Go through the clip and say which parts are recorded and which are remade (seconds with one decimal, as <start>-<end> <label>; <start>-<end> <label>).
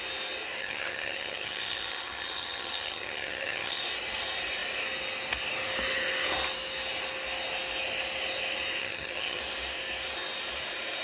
0.0-0.6 recorded; 0.6-3.8 remade; 3.8-8.8 recorded; 8.8-9.4 remade; 9.4-11.0 recorded